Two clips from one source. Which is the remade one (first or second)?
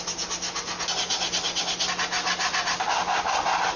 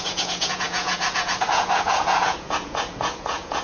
second